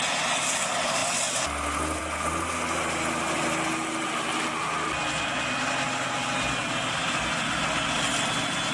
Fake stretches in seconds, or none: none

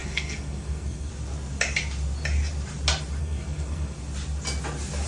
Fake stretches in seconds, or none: 0.0-1.1 (codec, SNAC); 3.2-4.0

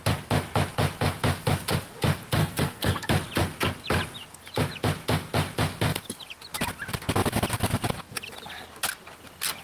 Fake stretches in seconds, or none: 2.4-3.1 (codec, SNAC)

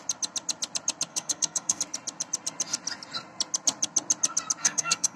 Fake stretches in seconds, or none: 1.1-1.8 (codec, SNAC); 4.6-5.2

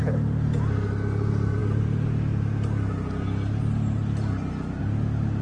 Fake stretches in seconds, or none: none

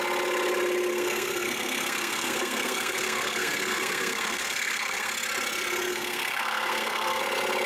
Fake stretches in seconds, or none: 0.9-5.1 (codec, SNAC); 5.9-7.2